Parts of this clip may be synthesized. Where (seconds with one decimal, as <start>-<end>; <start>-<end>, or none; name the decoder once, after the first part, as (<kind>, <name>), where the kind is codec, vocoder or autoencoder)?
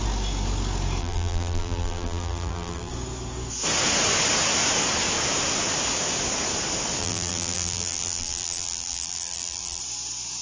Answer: 1.0-2.9 (vocoder, BigVGAN v2); 7.0-9.8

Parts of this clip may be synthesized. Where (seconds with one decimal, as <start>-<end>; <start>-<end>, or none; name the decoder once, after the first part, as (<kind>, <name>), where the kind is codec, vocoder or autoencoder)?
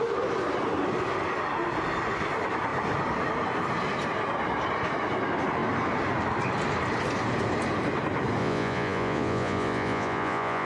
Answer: 8.4-10.7 (vocoder, Vocos)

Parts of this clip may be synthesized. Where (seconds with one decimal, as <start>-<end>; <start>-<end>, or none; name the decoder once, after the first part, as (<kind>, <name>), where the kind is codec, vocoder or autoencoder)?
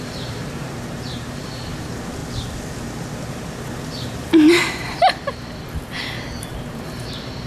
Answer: 0.0-2.2 (vocoder, BigVGAN v2); 3.3-4.9; 6.5-7.5